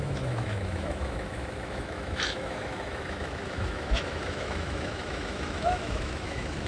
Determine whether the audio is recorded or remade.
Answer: remade